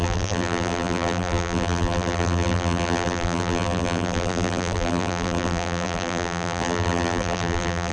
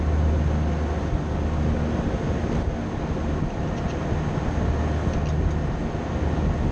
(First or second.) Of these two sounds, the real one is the second